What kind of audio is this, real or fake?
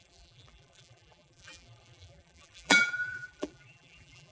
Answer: fake